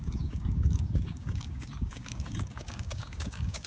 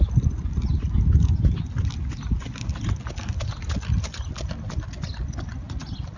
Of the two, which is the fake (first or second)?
first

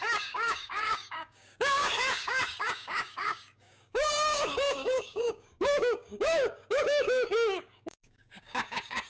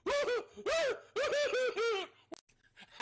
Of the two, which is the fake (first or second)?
first